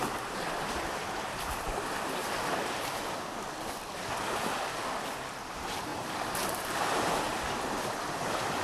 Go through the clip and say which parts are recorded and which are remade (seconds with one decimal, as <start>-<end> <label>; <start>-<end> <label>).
0.0-2.2 remade; 2.2-5.4 recorded; 5.4-7.3 remade; 7.3-8.0 recorded; 8.0-8.6 remade